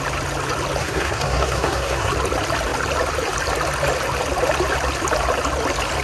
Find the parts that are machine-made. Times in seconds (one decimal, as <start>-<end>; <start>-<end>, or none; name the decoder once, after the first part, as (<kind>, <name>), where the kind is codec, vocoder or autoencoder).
0.8-2.1 (codec, SNAC)